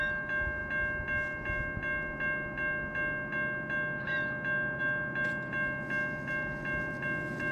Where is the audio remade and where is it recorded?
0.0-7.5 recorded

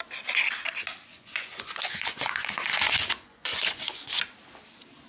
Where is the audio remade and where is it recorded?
0.0-1.1 recorded; 1.1-4.2 remade; 4.2-5.1 recorded